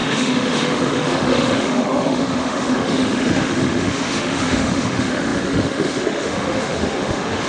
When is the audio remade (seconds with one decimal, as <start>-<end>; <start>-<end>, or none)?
0.0-7.5